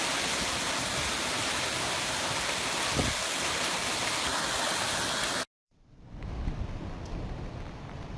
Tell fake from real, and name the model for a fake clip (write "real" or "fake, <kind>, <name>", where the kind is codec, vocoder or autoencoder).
real